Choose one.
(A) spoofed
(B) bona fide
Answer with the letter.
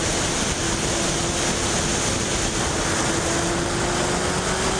B